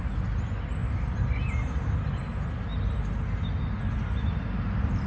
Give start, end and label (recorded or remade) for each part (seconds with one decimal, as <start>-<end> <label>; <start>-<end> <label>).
0.0-5.1 recorded